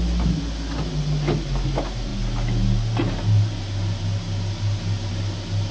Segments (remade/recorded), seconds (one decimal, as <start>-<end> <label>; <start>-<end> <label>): 0.0-5.7 recorded